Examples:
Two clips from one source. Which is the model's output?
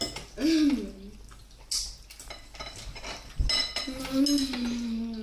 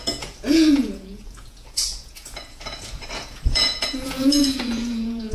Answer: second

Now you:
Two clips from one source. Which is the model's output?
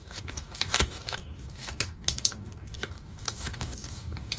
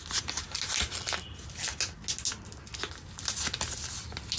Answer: first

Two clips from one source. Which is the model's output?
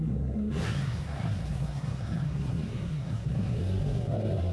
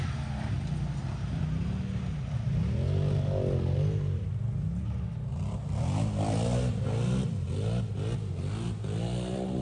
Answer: first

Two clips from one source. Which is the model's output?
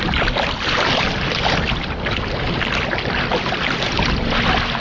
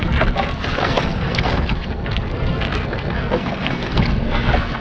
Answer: second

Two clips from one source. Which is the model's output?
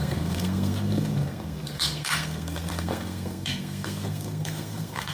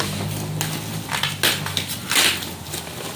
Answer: first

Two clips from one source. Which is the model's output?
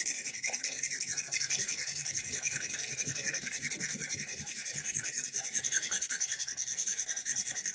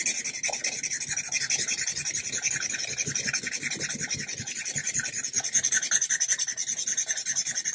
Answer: first